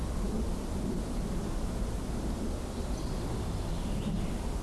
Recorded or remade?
recorded